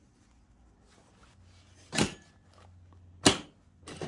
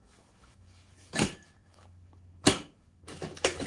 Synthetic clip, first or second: second